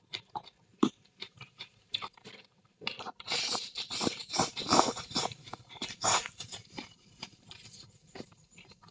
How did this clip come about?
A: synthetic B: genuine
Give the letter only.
A